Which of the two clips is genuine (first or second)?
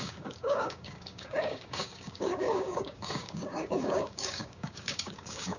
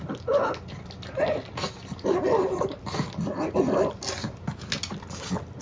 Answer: second